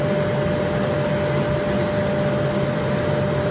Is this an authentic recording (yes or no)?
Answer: yes